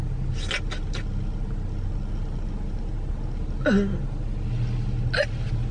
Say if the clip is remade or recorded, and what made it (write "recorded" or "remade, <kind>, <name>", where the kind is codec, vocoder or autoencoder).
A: recorded